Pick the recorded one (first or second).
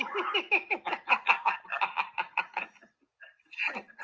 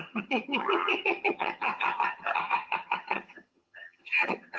first